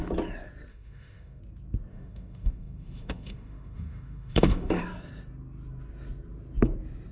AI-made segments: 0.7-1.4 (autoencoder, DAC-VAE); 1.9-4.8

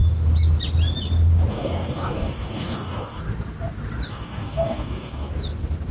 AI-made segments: 1.5-3.2 (codec, DAC); 4.1-5.3

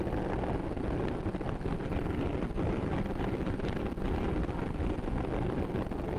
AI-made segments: 1.7-5.4 (vocoder, BigVGAN v2)

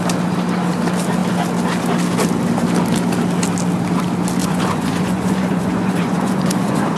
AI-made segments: 4.4-7.0 (vocoder, Vocos)